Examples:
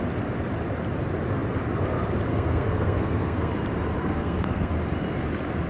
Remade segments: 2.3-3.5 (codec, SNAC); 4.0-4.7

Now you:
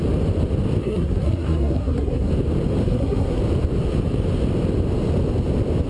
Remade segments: 0.8-2.3 (codec, SNAC); 2.8-3.4

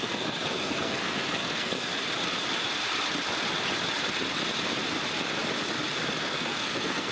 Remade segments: 0.0-1.9 (codec, SNAC); 6.2-7.1

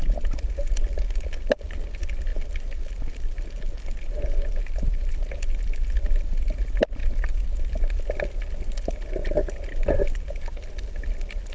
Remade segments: none

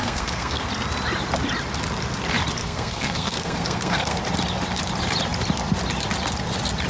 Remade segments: 0.0-0.7 (codec, SNAC); 2.6-4.2